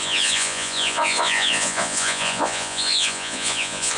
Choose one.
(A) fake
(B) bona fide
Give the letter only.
A